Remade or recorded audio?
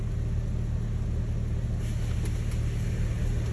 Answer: recorded